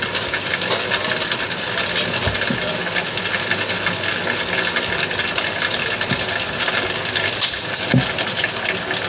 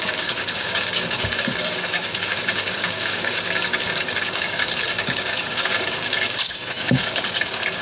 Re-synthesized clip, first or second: second